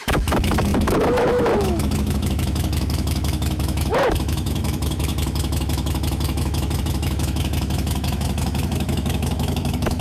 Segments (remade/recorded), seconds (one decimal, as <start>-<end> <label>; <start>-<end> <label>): 0.0-10.0 remade